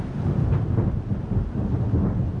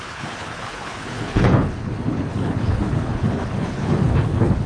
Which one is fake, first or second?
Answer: second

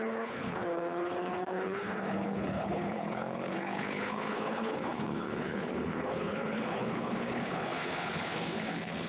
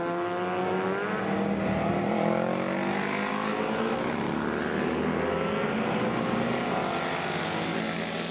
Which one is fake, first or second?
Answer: first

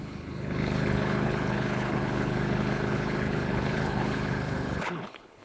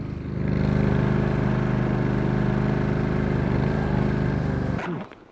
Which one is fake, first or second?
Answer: first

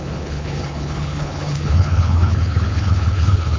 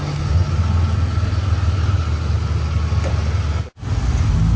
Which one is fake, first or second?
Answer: first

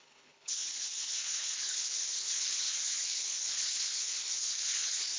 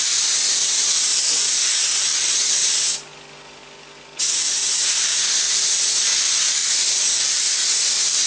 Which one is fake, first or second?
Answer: first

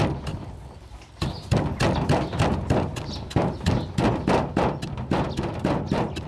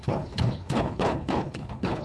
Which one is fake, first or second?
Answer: second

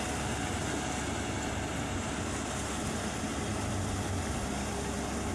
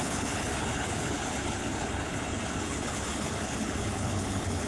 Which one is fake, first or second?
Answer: second